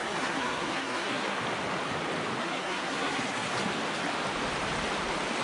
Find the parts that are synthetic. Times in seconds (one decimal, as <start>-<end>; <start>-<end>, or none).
0.0-1.4; 2.4-3.5